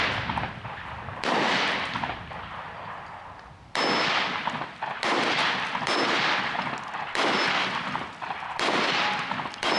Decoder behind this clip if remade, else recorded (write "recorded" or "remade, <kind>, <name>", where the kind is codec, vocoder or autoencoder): recorded